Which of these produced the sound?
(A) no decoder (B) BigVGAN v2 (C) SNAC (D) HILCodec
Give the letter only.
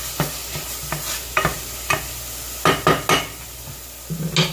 A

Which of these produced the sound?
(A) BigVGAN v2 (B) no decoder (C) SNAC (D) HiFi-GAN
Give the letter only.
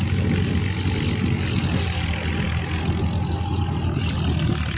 B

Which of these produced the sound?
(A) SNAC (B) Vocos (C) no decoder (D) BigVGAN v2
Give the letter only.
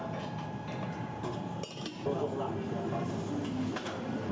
C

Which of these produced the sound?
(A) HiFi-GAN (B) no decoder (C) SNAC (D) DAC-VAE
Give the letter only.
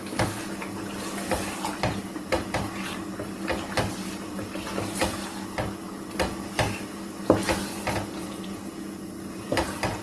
B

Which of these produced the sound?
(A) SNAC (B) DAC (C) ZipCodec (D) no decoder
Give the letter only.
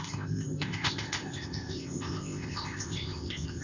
C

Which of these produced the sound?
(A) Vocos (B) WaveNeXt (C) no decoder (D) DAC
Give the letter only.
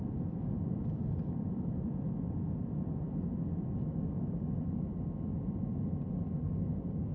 C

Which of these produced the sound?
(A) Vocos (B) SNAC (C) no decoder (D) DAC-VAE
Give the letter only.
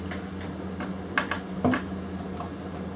C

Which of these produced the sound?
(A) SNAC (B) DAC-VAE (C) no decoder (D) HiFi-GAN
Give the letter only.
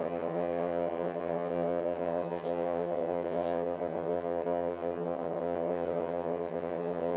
D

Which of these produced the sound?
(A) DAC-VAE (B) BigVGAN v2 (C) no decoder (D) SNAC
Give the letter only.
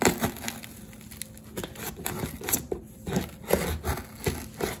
C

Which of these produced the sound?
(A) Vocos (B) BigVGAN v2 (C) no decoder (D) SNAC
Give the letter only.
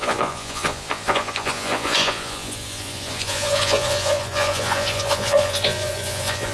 A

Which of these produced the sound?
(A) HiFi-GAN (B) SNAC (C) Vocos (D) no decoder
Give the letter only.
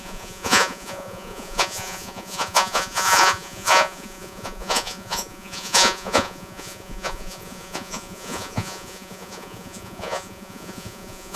C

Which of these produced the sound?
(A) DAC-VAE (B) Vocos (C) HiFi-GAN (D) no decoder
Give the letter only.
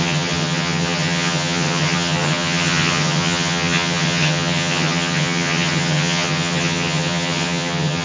C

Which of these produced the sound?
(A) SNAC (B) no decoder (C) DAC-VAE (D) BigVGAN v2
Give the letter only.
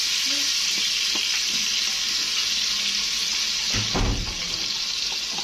B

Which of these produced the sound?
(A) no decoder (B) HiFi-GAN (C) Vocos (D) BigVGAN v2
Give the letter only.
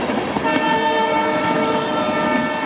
D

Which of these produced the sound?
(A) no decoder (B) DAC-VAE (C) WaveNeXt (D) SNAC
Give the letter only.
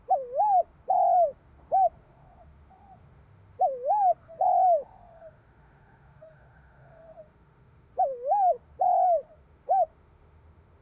B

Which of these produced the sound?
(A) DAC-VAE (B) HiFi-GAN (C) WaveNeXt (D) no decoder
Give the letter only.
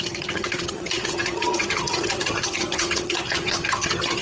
B